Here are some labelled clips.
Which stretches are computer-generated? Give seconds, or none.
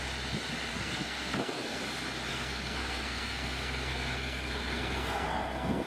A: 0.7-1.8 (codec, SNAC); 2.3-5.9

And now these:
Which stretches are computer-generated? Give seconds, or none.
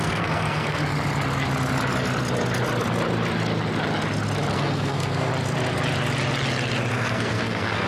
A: 0.0-0.8 (codec, SNAC); 4.5-5.3; 6.9-7.9